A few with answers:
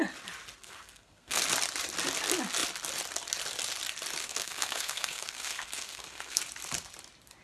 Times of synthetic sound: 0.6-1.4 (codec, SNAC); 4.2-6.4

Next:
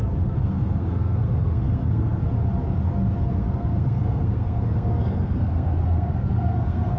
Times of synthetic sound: 0.0-2.2 (codec, SNAC); 3.3-7.0

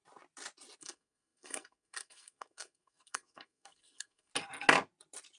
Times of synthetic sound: 0.8-4.3 (codec, SNAC)